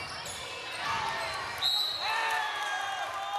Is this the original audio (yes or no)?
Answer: yes